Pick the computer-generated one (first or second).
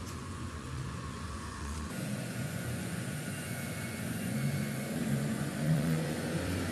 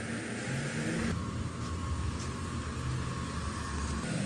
first